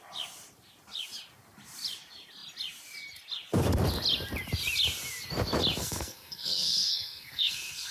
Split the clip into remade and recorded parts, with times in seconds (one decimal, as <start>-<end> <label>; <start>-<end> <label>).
0.0-5.8 recorded; 5.8-7.9 remade